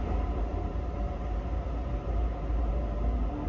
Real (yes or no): yes